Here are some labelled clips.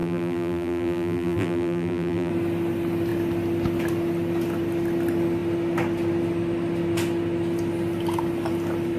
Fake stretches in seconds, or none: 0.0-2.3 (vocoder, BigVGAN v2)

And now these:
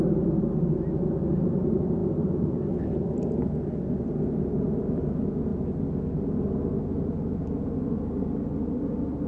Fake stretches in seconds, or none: none

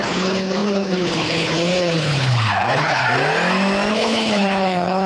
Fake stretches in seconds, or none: 0.0-3.0 (codec, HILCodec); 3.9-5.1

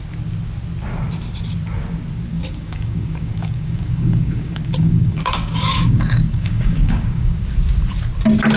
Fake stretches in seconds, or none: 2.3-7.4 (codec, DAC)

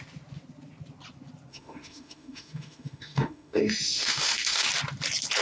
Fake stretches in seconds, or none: 1.5-4.7 (autoencoder, DAC-VAE)

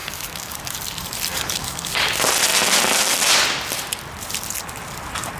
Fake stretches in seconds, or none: 0.0-0.7 (codec, DAC); 1.3-2.1

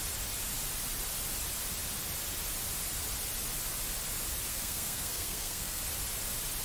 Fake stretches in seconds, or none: 4.5-5.8 (codec, SNAC)

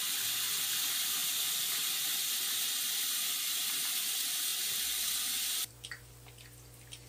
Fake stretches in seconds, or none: none